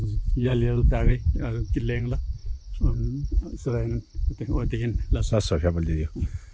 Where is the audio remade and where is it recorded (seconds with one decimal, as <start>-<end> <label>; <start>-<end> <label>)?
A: 0.0-3.9 remade; 3.9-4.6 recorded; 4.6-5.1 remade; 5.1-6.5 recorded